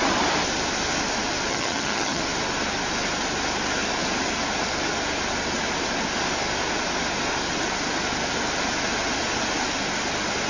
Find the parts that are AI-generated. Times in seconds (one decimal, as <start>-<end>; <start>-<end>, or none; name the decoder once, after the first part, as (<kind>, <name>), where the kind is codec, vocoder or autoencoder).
1.5-2.2 (vocoder, HiFi-GAN)